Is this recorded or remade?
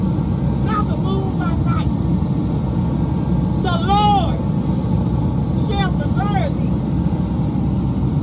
recorded